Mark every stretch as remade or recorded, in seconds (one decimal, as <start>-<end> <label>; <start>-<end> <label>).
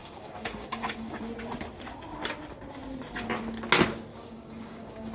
0.0-1.2 remade; 1.2-4.1 recorded; 4.1-5.1 remade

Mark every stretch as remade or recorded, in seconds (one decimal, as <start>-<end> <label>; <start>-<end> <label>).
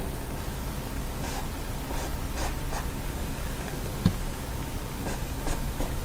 0.0-0.5 recorded; 0.5-1.4 remade; 1.4-2.9 recorded; 2.9-6.0 remade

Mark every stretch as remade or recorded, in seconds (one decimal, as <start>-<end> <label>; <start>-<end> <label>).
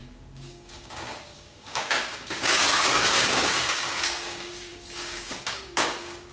0.0-6.3 remade